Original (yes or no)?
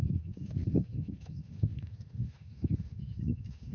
no